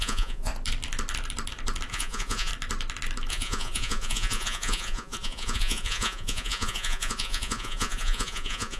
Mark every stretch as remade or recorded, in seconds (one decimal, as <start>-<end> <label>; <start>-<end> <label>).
0.0-0.5 remade; 0.5-1.9 recorded; 1.9-2.5 remade; 2.5-3.3 recorded; 3.3-8.8 remade